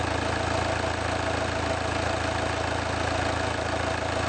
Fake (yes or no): no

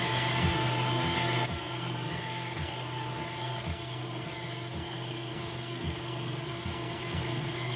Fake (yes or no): yes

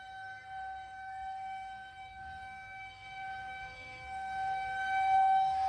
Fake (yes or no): yes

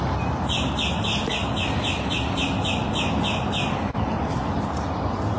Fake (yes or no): no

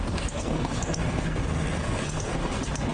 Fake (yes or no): yes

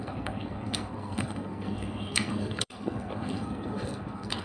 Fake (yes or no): yes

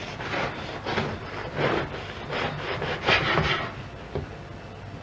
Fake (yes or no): no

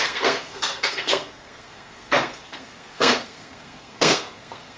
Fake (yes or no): yes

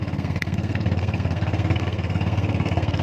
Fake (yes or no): yes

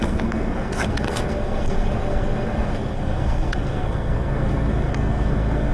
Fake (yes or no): yes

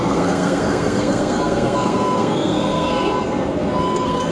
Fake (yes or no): yes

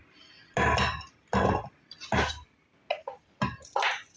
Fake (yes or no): no